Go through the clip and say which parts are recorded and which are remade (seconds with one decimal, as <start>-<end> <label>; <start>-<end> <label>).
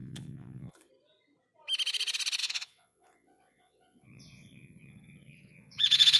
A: 0.0-0.9 remade; 0.9-2.4 recorded; 2.4-6.2 remade